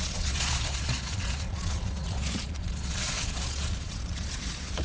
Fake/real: fake